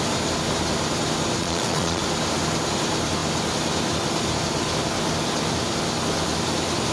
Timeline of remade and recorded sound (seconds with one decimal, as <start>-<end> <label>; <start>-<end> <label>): 0.0-1.4 recorded; 1.4-2.0 remade; 2.0-6.9 recorded